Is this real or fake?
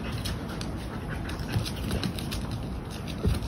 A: real